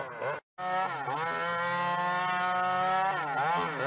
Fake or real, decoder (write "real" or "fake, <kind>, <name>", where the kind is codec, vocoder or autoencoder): real